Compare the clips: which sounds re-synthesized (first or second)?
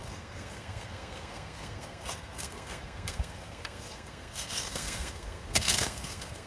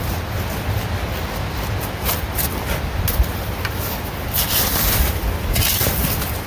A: first